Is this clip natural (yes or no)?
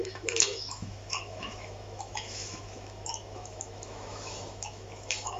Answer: no